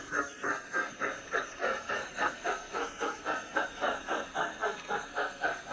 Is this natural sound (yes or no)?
no